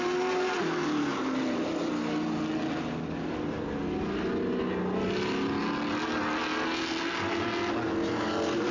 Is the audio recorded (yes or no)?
yes